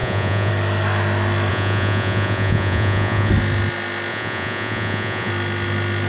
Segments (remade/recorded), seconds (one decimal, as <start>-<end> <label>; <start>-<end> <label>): 0.0-0.5 remade; 0.5-1.5 recorded; 1.5-3.3 remade; 3.3-4.1 recorded; 4.1-5.3 remade; 5.3-6.1 recorded